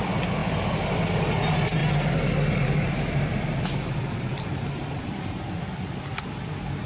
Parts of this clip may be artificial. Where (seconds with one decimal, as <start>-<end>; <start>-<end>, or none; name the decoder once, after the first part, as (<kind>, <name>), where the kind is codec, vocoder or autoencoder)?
none